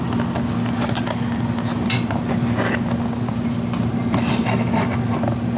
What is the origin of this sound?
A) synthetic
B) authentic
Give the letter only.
B